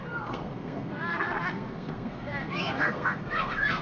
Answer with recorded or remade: remade